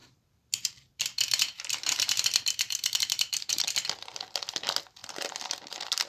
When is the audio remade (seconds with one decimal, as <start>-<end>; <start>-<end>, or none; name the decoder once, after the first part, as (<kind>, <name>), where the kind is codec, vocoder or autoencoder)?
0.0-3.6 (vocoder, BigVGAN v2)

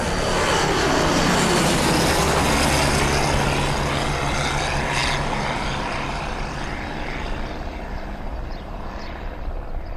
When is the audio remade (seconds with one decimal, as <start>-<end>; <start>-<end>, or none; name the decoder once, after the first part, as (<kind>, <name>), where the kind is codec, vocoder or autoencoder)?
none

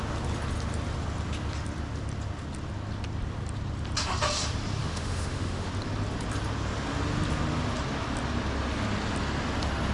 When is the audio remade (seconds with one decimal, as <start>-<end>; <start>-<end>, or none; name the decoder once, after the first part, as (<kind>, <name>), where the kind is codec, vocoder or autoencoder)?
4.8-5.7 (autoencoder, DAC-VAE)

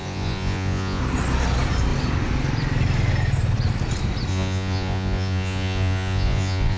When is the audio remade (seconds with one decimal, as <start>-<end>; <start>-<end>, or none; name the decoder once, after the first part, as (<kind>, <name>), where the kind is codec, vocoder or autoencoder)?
0.0-1.0 (vocoder, Vocos); 4.3-6.8

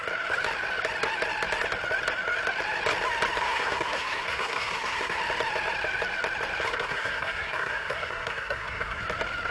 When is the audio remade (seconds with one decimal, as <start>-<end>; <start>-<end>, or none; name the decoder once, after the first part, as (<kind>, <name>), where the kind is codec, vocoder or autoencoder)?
3.4-5.2 (codec, SNAC); 6.7-9.0

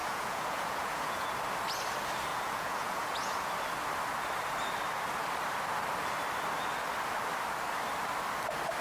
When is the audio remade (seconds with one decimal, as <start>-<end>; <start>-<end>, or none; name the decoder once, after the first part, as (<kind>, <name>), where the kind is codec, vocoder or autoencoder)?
0.0-1.3 (vocoder, Vocos); 2.3-3.4

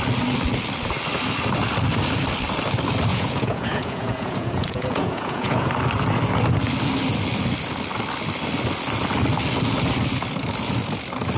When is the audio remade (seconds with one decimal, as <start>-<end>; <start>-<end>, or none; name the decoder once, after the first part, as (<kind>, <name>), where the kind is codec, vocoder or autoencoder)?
3.1-5.7 (vocoder, Vocos)

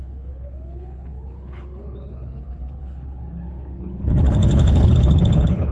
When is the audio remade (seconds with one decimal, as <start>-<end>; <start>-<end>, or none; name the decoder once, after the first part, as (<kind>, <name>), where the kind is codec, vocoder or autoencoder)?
0.0-5.7 (codec, HILCodec)